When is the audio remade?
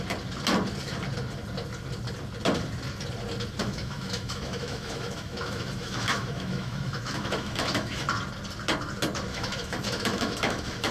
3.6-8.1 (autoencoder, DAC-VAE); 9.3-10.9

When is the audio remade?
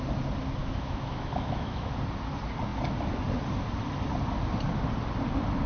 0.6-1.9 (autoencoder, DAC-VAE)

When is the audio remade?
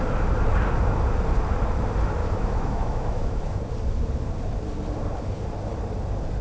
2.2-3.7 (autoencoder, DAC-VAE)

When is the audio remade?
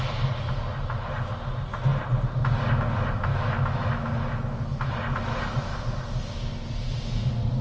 3.3-4.9 (autoencoder, DAC-VAE)